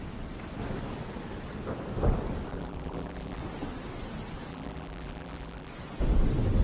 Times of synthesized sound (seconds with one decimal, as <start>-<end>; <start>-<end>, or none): 2.5-3.4; 4.5-5.7